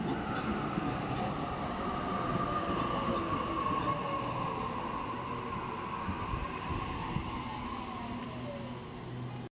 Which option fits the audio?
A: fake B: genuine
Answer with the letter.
B